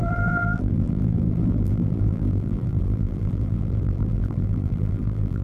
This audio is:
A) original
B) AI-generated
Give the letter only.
B